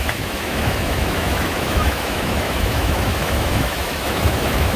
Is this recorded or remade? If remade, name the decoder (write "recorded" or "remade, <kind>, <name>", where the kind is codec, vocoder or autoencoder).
remade, autoencoder, DAC-VAE